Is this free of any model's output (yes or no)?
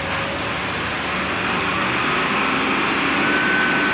yes